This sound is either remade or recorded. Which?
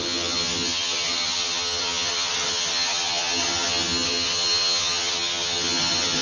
remade